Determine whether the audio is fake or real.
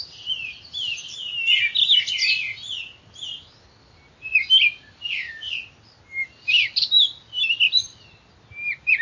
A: real